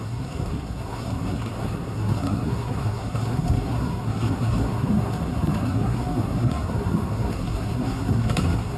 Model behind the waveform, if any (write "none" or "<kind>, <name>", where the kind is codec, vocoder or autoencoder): codec, SNAC